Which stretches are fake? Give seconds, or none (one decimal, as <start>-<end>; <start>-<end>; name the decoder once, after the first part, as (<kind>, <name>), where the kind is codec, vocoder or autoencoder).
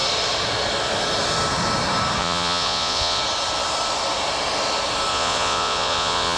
2.2-3.2 (vocoder, Vocos); 5.1-6.4